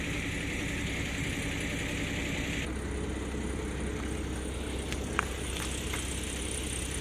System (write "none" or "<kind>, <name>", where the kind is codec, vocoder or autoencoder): none